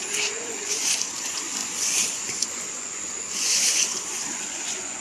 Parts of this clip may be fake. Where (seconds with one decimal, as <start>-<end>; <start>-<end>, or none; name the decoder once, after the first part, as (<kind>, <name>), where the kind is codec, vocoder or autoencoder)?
0.0-5.0 (vocoder, Vocos)